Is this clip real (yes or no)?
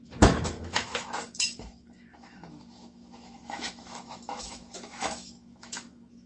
no